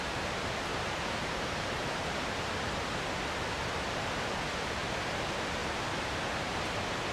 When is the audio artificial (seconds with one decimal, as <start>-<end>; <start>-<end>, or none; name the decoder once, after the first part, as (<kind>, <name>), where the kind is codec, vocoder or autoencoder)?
0.7-2.3 (vocoder, BigVGAN v2)